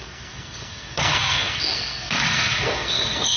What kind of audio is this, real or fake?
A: fake